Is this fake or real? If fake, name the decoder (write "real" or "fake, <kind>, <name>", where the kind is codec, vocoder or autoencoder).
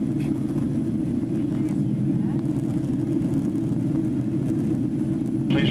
real